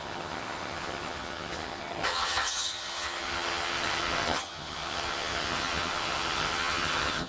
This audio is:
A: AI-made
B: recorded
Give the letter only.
A